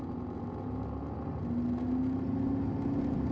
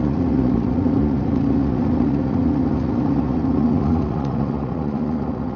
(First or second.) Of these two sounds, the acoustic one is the first